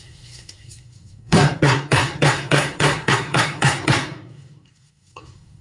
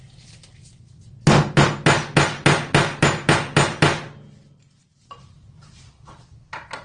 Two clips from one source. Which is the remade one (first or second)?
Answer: first